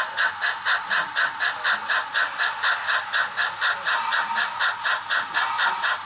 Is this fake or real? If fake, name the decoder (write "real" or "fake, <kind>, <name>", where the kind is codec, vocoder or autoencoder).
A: real